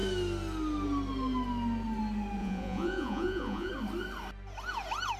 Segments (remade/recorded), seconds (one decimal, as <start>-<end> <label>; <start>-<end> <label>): 0.0-2.4 recorded; 2.4-3.7 remade; 3.7-5.2 recorded